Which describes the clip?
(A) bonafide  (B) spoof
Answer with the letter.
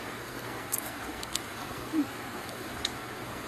B